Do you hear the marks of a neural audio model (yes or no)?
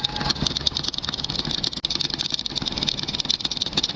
no